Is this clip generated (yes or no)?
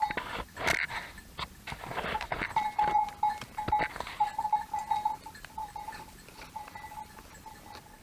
no